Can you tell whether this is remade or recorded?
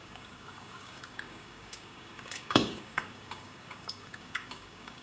remade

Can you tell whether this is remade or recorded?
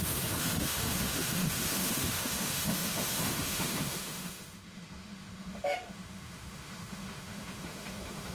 remade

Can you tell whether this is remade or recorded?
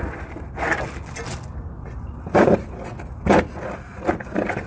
recorded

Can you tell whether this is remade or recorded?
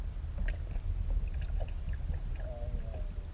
recorded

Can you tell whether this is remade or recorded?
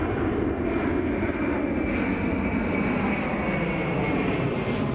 recorded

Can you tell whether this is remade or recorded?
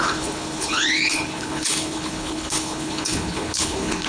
remade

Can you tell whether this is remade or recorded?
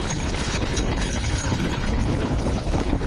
remade